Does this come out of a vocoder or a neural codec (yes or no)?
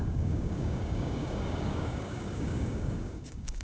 yes